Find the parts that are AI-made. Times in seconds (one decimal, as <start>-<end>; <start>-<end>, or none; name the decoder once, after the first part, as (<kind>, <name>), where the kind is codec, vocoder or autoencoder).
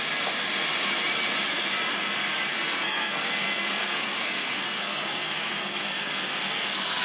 2.5-7.0 (codec, SNAC)